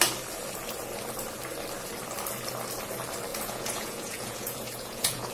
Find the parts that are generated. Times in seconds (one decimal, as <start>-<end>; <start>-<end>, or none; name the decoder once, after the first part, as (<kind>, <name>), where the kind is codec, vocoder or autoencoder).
3.3-5.3 (vocoder, Vocos)